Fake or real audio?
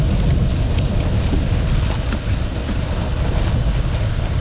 real